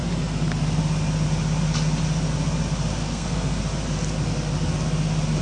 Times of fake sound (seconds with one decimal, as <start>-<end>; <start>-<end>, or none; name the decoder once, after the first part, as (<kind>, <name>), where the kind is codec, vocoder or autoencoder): 3.0-3.6 (codec, SNAC)